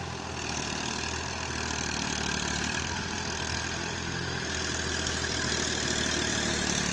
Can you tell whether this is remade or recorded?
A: recorded